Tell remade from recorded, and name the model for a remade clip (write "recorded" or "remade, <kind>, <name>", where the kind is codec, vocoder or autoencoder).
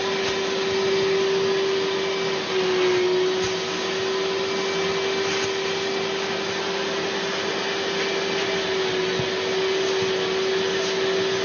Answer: recorded